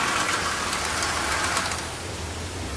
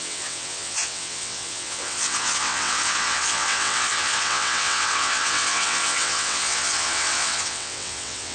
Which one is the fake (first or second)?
second